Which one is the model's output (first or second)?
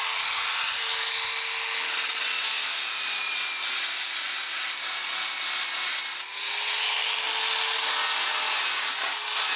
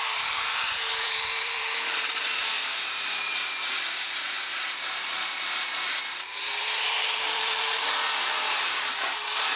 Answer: second